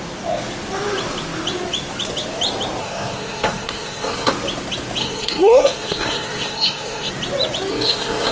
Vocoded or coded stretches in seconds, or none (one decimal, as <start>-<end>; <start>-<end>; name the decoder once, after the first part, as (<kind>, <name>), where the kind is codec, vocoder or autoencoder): 2.8-4.3 (codec, SNAC); 5.0-7.1; 7.7-8.3